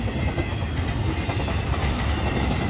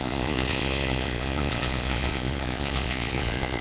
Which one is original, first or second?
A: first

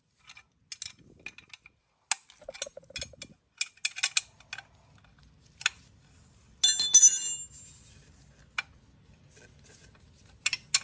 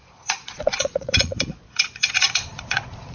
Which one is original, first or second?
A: first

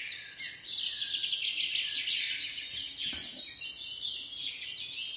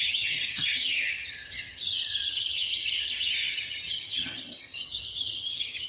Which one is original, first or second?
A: first